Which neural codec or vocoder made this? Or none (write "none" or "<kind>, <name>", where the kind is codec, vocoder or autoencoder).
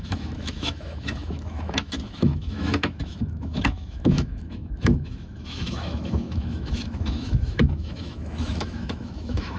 autoencoder, DAC-VAE